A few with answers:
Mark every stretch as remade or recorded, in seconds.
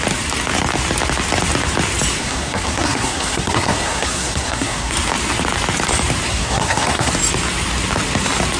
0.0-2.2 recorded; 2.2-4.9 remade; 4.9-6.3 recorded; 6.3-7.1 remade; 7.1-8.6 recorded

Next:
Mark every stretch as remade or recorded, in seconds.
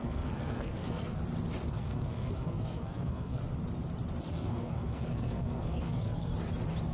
0.0-1.2 remade; 1.2-1.7 recorded; 1.7-3.4 remade; 3.4-4.3 recorded; 4.3-6.3 remade; 6.3-6.9 recorded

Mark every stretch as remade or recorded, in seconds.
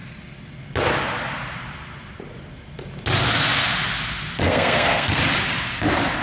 0.0-4.4 recorded; 4.4-5.2 remade; 5.2-6.2 recorded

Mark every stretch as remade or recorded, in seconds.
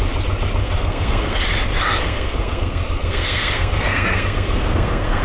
0.0-0.6 recorded; 0.6-1.4 remade; 1.4-2.0 recorded; 2.0-5.2 remade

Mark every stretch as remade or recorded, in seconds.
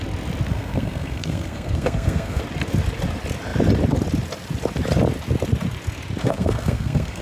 0.0-0.5 recorded; 0.5-2.4 remade; 2.4-6.2 recorded; 6.2-7.2 remade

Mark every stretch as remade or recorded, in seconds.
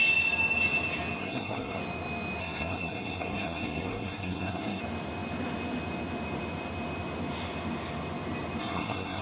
0.0-1.2 recorded; 1.2-1.8 remade; 1.8-2.4 recorded; 2.4-4.8 remade; 4.8-8.6 recorded; 8.6-9.2 remade